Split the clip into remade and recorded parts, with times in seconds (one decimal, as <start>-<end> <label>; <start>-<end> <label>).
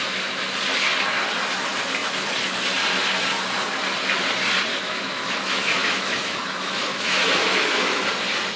0.0-4.7 recorded; 4.7-8.1 remade; 8.1-8.6 recorded